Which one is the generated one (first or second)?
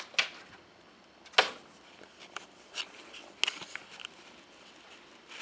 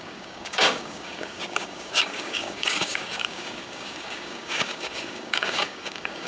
second